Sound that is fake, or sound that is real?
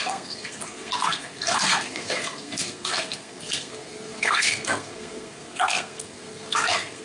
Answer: fake